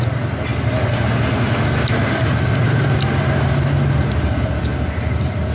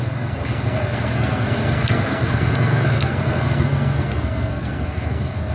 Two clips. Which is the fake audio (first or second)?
second